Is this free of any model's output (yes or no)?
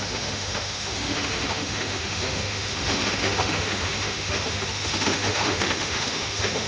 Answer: no